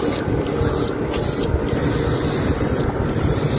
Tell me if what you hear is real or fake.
real